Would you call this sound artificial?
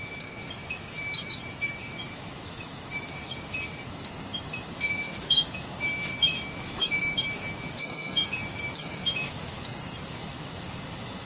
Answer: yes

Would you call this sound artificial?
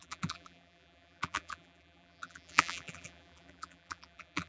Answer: yes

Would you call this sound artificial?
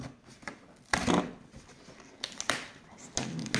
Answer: no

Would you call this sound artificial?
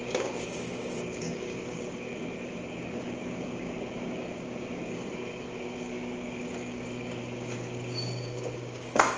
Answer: yes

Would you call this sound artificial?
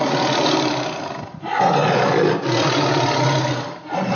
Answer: no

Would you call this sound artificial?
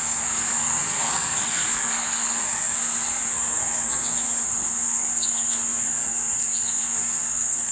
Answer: yes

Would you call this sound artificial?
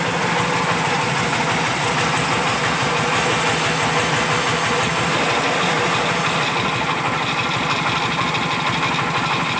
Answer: no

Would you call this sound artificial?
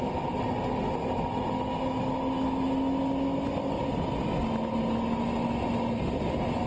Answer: no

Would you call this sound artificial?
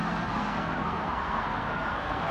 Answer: yes